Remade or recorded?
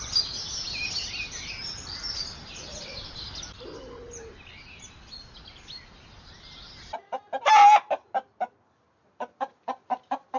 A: recorded